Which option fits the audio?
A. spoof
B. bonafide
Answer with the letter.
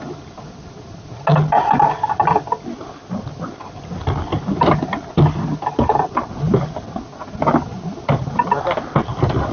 B